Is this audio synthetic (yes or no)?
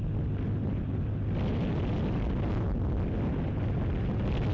no